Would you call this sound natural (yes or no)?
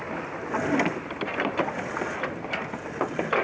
yes